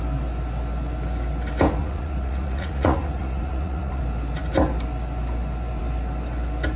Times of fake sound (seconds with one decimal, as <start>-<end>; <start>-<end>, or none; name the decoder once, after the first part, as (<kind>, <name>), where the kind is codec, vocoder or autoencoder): 1.8-4.0 (vocoder, Vocos)